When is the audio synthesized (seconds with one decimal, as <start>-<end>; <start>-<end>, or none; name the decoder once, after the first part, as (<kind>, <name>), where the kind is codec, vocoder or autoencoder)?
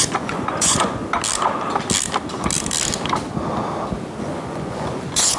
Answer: 0.0-1.0 (vocoder, Vocos); 4.2-5.4